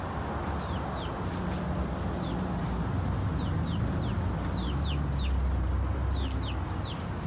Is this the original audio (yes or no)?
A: yes